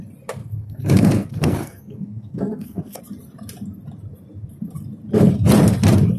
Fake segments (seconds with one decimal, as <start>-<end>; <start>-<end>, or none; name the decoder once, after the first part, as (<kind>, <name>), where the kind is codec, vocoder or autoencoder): 0.4-3.0 (codec, SNAC)